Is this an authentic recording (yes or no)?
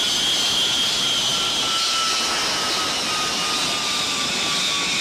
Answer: yes